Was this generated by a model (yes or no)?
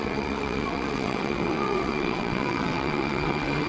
yes